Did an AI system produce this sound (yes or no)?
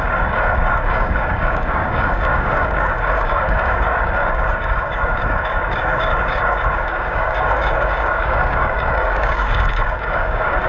yes